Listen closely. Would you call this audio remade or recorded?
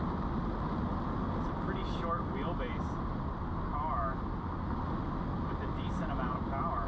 recorded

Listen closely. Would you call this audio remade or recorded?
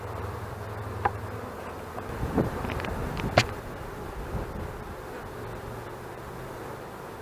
remade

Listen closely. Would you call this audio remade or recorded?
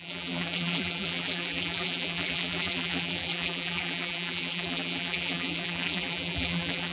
remade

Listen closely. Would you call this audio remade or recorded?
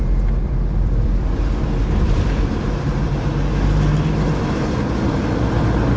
remade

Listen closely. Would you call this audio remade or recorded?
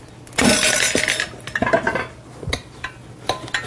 recorded